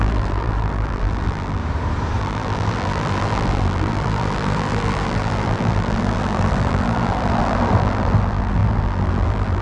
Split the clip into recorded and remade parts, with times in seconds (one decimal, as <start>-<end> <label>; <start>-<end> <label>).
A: 0.0-1.6 remade; 1.6-2.2 recorded; 2.2-9.6 remade